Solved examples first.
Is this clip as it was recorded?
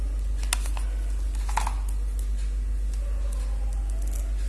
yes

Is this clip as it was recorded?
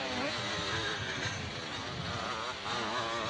yes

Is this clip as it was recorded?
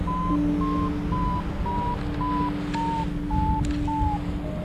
yes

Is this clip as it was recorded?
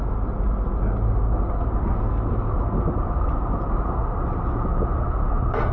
yes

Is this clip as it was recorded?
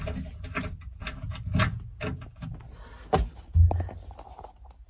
yes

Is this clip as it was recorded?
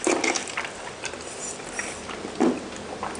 yes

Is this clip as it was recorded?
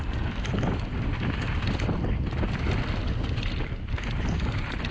yes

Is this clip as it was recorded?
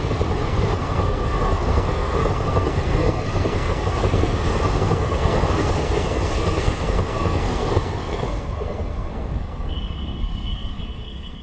no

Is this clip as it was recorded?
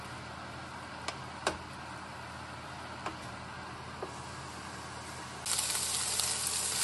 yes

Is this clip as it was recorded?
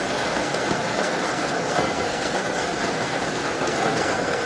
no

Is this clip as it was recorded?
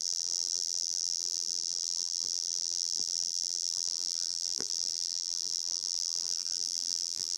no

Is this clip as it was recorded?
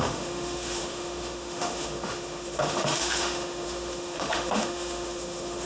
no